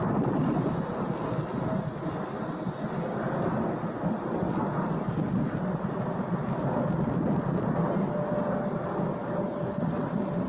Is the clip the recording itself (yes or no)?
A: yes